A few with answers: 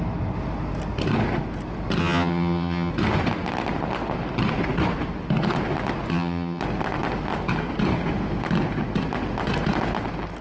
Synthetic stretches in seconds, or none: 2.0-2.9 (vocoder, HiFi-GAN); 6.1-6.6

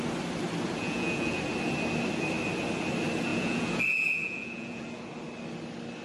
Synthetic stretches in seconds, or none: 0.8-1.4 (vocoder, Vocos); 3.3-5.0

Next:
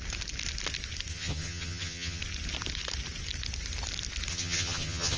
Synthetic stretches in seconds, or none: 1.1-2.2 (vocoder, HiFi-GAN); 4.3-5.2

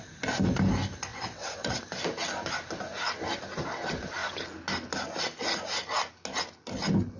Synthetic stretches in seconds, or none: 1.1-1.8 (vocoder, WaveNeXt)

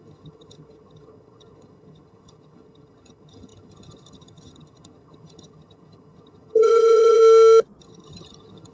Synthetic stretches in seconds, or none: 0.0-7.2 (vocoder, HiFi-GAN); 7.8-8.7

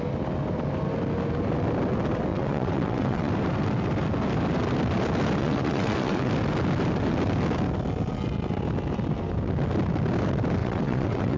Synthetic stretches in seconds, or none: 2.3-3.3 (vocoder, WaveNeXt); 5.4-6.3; 10.6-11.4

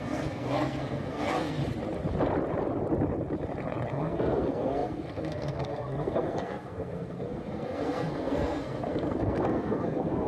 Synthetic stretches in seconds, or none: 0.0-1.6 (codec, SNAC); 3.9-10.3